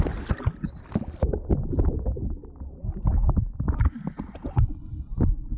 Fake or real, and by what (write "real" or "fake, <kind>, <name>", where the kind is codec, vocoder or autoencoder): real